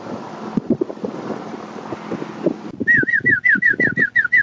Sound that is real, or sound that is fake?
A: real